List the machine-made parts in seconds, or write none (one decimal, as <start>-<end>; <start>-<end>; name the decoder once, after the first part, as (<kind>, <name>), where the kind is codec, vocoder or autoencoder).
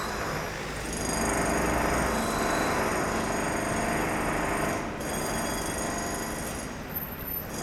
none